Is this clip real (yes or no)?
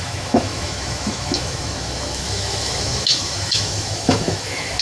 no